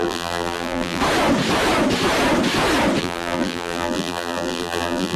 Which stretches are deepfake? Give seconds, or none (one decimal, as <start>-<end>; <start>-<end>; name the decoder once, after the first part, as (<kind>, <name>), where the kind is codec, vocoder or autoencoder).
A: 0.0-1.0 (vocoder, BigVGAN v2); 3.0-5.2